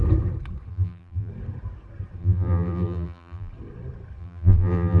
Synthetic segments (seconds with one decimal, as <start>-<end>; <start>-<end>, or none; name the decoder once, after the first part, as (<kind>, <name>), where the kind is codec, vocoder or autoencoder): 0.7-1.3 (vocoder, BigVGAN v2); 2.2-3.5; 4.2-5.0